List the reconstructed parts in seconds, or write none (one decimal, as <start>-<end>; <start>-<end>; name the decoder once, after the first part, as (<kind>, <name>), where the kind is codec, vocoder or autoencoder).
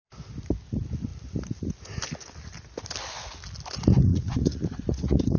4.1-5.4 (vocoder, Vocos)